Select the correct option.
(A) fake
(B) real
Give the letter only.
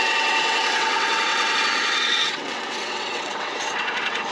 A